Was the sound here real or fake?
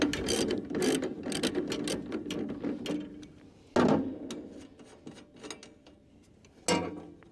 real